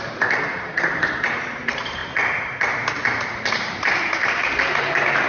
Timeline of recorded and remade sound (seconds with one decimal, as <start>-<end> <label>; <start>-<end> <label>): 0.0-2.0 remade; 2.0-5.3 recorded